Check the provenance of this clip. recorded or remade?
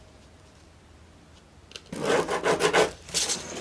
recorded